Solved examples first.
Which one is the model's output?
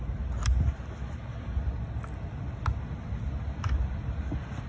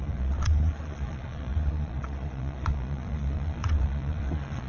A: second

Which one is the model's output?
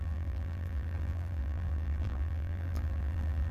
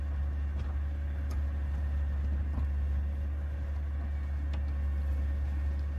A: first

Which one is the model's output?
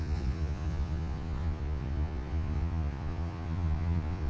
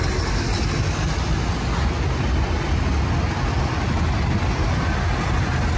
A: first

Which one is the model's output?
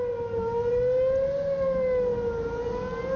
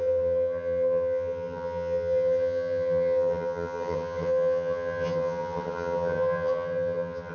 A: second